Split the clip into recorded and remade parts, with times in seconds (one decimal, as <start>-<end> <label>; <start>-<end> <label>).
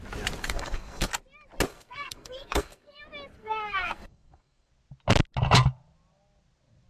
0.0-0.4 recorded; 0.4-1.1 remade; 1.1-1.7 recorded; 1.7-3.0 remade; 3.0-3.4 recorded; 3.4-4.7 remade; 4.7-6.9 recorded